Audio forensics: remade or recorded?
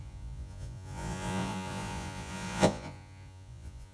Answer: remade